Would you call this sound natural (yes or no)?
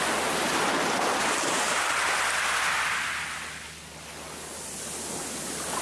yes